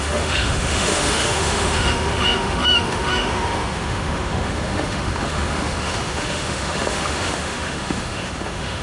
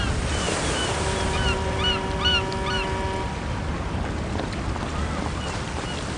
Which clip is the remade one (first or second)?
first